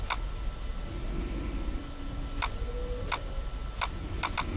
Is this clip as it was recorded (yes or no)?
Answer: yes